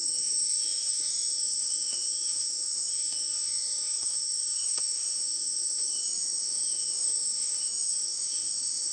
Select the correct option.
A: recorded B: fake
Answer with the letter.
B